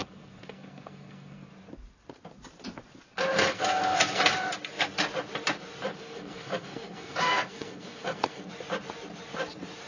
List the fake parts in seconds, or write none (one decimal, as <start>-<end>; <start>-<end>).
0.0-1.5; 3.5-4.2; 5.9-8.5